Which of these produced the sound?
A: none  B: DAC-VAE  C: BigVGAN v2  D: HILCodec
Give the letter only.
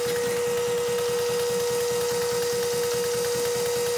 A